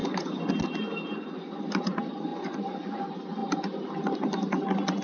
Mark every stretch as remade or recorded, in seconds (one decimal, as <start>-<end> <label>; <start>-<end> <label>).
0.0-0.5 remade; 0.5-2.3 recorded; 2.3-3.0 remade; 3.0-5.0 recorded